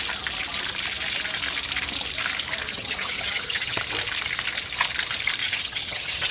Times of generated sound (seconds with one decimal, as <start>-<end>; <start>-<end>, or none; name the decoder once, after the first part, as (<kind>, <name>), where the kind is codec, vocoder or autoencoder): 2.7-3.8 (vocoder, HiFi-GAN); 5.4-6.3